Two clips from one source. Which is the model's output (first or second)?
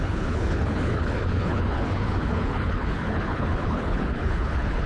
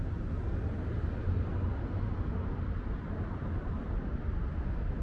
first